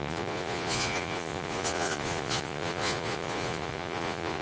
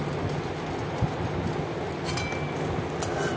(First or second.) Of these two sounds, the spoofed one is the first